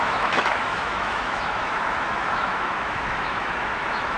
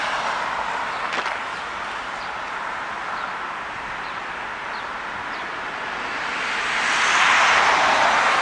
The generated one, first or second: first